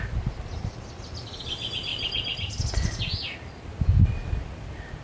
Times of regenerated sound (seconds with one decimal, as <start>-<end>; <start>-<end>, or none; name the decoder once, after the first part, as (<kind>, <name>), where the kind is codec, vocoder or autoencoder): none